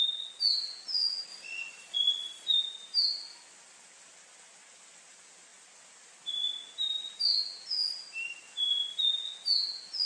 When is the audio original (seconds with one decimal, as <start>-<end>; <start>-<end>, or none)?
0.0-1.3; 2.6-10.1